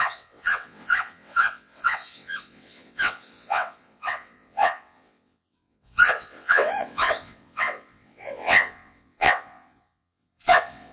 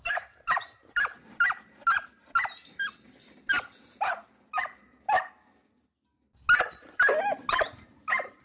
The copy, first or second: first